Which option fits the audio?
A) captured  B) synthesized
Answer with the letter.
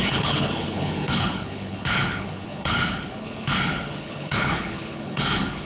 B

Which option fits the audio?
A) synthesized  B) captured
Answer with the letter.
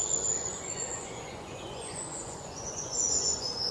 A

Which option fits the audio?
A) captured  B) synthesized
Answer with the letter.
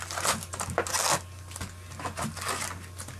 A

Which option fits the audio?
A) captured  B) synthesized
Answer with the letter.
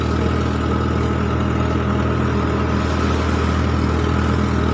A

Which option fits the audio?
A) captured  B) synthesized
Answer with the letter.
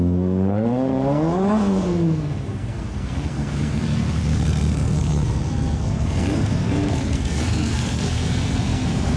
B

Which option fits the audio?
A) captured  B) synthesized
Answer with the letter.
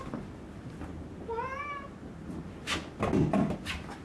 A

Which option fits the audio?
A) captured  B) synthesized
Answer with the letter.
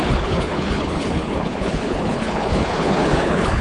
B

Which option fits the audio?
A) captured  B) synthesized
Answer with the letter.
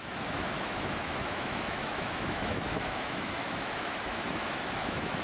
B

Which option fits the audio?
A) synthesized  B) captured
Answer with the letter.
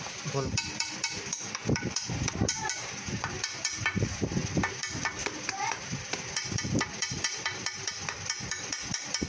A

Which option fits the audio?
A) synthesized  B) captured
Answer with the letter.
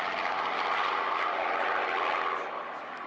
B